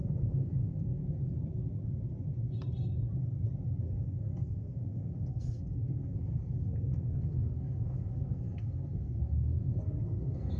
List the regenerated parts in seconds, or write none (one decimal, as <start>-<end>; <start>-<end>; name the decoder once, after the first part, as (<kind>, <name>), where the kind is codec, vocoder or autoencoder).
0.0-1.0 (codec, SNAC); 3.8-10.6